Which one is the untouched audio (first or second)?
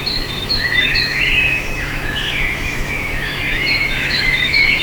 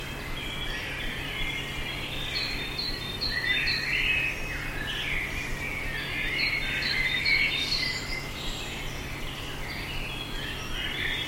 second